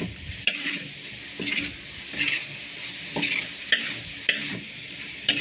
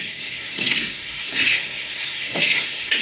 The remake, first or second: second